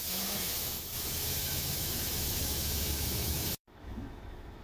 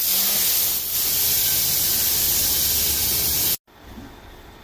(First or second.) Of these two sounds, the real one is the second